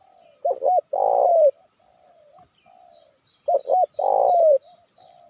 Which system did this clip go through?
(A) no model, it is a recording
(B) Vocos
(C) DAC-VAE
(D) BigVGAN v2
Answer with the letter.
A